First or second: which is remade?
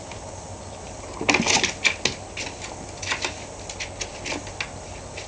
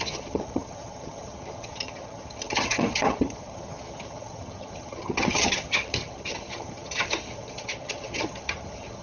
second